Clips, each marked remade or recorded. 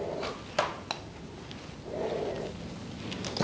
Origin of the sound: recorded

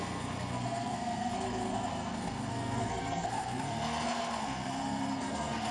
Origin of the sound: remade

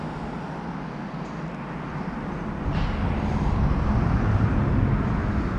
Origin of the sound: recorded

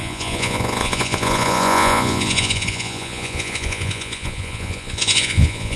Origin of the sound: remade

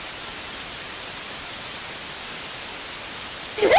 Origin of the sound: recorded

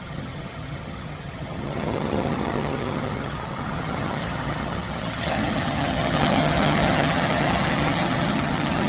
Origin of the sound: remade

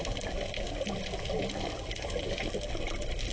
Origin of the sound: recorded